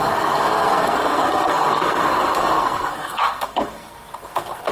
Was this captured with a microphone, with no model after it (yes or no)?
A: no